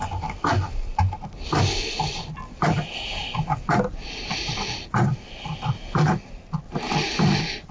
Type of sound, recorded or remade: recorded